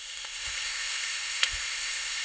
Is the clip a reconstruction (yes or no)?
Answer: yes